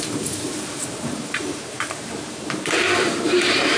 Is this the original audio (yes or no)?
no